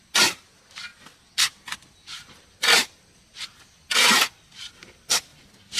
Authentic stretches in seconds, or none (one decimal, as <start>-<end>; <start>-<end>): 0.0-5.8